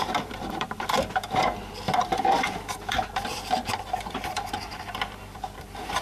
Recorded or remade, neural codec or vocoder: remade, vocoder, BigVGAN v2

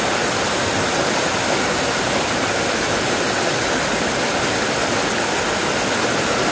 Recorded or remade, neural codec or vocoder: recorded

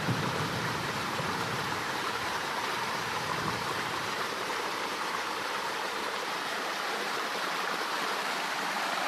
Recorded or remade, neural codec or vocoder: remade, vocoder, BigVGAN v2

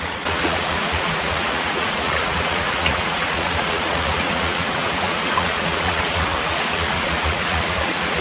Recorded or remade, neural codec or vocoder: remade, vocoder, Vocos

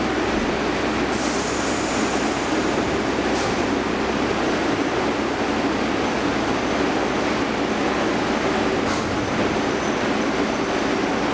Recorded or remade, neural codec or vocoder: recorded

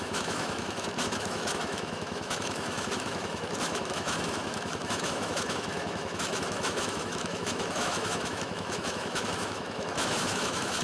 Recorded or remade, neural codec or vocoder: remade, autoencoder, DAC-VAE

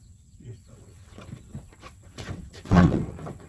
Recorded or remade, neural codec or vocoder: remade, vocoder, WaveNeXt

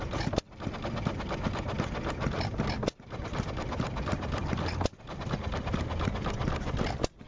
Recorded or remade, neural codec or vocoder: recorded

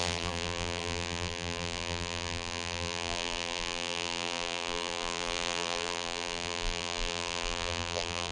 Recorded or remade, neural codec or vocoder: remade, vocoder, BigVGAN v2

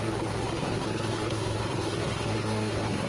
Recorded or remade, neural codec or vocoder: remade, codec, SNAC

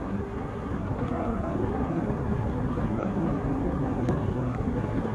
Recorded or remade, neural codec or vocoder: remade, codec, SNAC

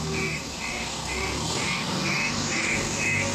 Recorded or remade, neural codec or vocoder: remade, codec, DAC